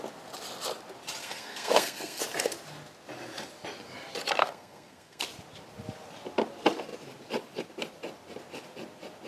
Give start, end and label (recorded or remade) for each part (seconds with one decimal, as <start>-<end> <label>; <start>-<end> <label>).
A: 0.0-1.2 recorded; 1.2-2.2 remade; 2.2-4.4 recorded; 4.4-5.2 remade; 5.2-9.3 recorded

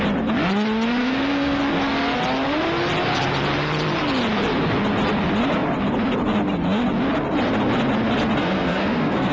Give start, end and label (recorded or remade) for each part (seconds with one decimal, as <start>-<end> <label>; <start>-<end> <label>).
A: 0.0-1.0 recorded; 1.0-1.6 remade; 1.6-8.4 recorded; 8.4-9.3 remade

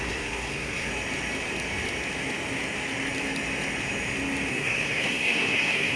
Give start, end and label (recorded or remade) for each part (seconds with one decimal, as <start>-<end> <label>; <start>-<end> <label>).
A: 0.0-0.9 remade; 0.9-4.5 recorded; 4.5-6.0 remade

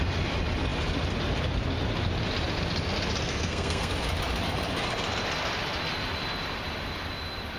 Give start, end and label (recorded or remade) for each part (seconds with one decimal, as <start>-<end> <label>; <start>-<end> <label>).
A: 0.0-3.3 recorded; 3.3-3.9 remade; 3.9-7.6 recorded

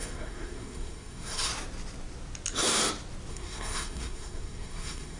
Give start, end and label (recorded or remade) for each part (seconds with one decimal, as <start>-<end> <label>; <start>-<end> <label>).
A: 0.0-1.5 remade; 1.5-3.3 recorded; 3.3-5.2 remade

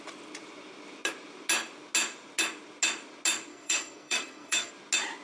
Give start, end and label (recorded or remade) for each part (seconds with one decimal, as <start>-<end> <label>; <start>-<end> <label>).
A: 0.0-3.5 recorded; 3.5-4.7 remade; 4.7-5.2 recorded

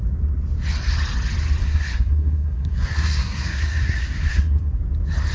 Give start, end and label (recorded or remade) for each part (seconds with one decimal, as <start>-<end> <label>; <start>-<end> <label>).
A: 0.0-1.6 recorded; 1.6-4.8 remade; 4.8-5.3 recorded

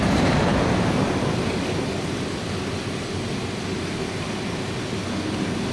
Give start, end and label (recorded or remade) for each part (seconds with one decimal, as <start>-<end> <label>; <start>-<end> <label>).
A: 0.0-5.7 recorded